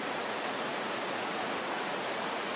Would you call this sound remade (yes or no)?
yes